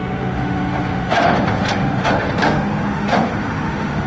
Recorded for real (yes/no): no